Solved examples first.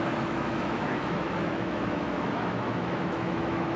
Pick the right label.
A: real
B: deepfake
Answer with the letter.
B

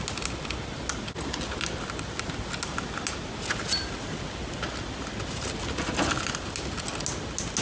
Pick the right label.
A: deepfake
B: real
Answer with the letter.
B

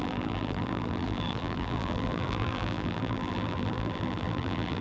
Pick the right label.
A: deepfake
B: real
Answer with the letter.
A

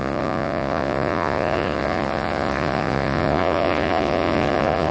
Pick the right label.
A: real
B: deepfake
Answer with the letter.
B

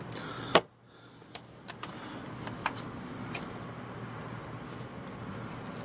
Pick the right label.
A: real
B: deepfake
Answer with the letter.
A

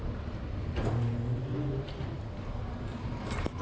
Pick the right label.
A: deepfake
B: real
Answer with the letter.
B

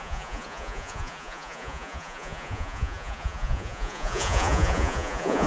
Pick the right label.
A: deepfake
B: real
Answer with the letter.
A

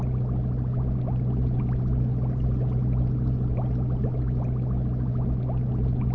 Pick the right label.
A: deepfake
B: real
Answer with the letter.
B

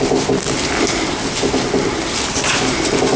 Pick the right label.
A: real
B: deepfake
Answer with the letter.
A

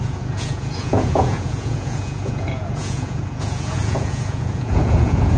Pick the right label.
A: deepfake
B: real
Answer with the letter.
A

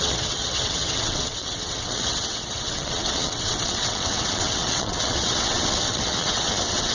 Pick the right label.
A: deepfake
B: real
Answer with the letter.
A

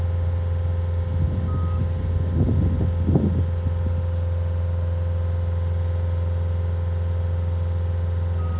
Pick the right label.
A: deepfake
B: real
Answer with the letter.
B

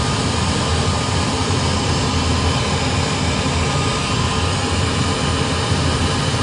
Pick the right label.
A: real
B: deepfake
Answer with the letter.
A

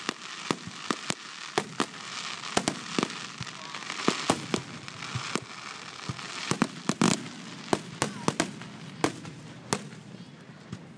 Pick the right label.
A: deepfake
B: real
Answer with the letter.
B